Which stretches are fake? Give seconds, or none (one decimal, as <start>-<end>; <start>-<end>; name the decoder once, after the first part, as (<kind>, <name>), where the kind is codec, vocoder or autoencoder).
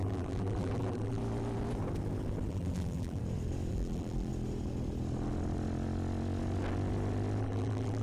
0.0-1.2 (vocoder, BigVGAN v2); 2.5-3.2; 3.7-4.3; 7.4-8.0